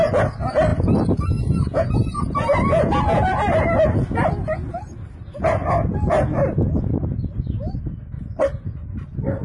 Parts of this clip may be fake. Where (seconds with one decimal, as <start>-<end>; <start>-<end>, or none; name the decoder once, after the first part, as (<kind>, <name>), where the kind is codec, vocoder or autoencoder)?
none